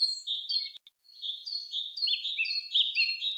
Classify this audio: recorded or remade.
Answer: recorded